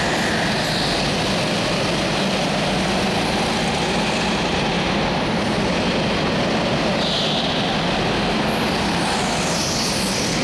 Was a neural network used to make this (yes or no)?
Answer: no